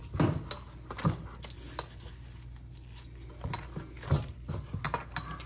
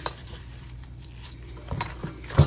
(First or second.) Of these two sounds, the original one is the first